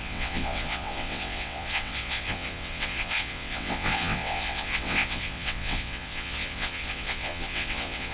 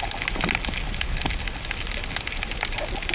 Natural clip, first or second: second